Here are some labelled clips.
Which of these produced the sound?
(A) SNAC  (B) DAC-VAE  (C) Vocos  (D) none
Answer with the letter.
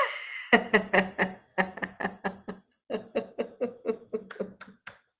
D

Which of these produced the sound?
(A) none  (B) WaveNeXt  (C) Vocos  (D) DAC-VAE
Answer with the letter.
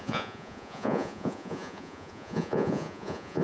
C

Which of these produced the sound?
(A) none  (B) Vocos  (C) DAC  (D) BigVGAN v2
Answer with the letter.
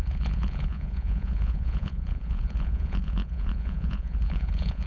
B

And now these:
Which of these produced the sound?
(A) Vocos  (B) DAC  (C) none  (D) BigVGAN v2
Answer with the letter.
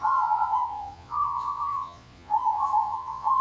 A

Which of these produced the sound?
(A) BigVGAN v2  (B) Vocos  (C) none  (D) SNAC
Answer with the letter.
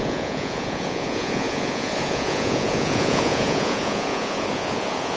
B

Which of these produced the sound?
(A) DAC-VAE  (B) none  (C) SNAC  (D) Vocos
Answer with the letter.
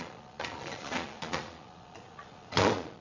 D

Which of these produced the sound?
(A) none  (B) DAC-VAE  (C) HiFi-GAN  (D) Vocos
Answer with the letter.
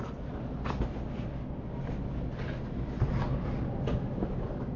A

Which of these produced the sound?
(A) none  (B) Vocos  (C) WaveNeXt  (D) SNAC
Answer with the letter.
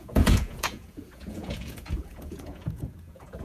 B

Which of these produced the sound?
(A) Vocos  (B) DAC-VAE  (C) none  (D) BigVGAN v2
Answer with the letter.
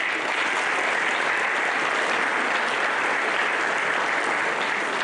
C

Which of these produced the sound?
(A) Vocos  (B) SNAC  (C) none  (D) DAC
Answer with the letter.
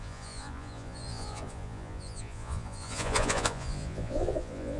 A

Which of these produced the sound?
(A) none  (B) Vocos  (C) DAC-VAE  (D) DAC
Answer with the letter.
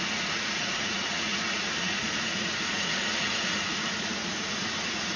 B